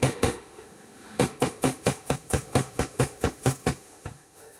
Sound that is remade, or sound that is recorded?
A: remade